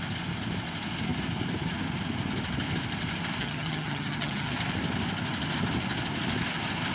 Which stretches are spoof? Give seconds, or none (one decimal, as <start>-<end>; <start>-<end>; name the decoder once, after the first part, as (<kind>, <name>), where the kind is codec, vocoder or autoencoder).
3.4-4.5 (vocoder, HiFi-GAN)